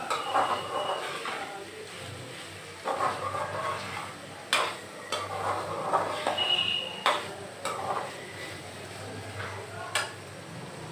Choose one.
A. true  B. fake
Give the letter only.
A